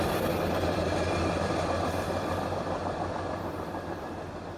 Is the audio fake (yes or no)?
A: no